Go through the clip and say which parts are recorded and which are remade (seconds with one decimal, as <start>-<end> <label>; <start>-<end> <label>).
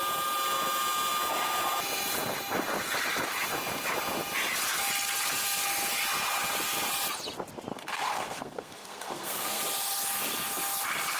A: 0.0-7.7 recorded; 7.7-9.6 remade; 9.6-11.2 recorded